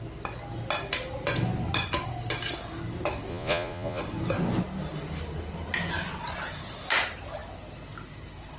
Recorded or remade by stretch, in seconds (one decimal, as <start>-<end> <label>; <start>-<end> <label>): 0.0-3.3 recorded; 3.3-4.0 remade; 4.0-8.6 recorded